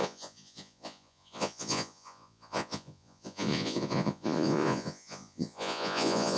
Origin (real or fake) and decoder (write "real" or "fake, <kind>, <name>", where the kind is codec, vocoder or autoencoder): fake, vocoder, Vocos